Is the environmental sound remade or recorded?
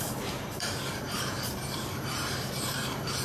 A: remade